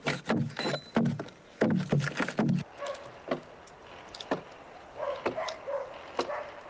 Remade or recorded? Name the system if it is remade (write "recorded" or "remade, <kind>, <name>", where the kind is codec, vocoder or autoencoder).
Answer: recorded